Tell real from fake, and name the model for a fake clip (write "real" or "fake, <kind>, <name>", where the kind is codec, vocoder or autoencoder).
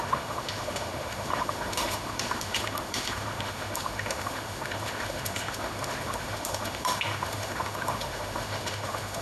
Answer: fake, autoencoder, DAC-VAE